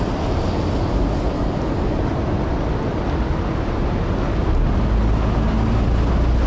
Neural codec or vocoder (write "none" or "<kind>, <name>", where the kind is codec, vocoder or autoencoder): none